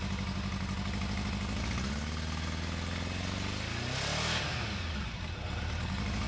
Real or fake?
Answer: real